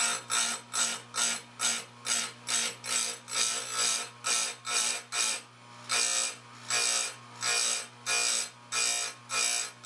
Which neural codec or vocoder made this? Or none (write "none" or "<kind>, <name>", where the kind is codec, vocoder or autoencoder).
none